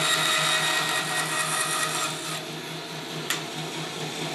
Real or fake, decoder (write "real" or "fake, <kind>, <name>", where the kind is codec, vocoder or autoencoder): real